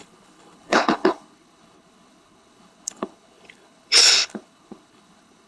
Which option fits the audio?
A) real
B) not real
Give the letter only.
B